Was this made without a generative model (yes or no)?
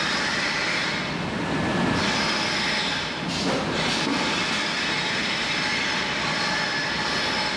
no